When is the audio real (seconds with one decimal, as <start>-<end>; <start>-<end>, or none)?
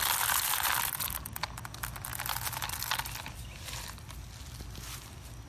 0.0-5.5